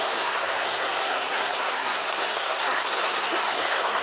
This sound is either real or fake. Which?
fake